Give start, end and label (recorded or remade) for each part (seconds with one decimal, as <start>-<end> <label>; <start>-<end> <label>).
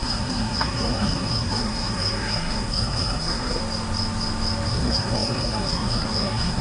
0.0-3.6 remade; 3.6-4.7 recorded; 4.7-6.6 remade